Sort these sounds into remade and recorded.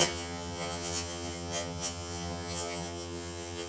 remade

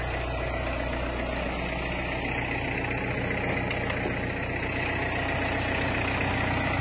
recorded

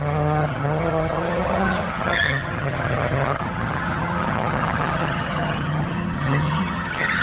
remade